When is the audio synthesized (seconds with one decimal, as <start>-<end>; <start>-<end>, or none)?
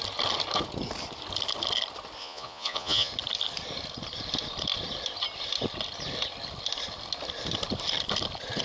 2.2-3.1